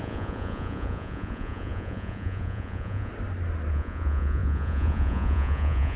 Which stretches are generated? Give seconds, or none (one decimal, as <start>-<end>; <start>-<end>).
0.0-3.1; 3.7-6.0